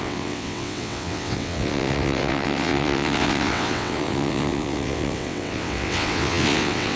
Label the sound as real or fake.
fake